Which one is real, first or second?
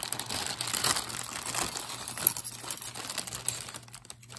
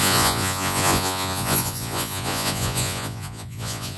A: first